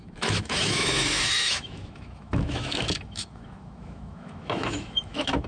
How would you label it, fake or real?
fake